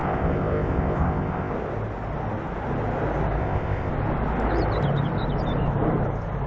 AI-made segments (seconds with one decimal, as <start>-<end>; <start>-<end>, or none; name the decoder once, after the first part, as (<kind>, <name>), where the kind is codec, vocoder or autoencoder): 0.0-1.5 (codec, ZipCodec); 3.4-3.9